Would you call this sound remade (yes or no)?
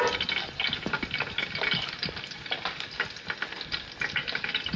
no